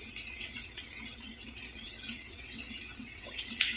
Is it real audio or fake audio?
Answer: fake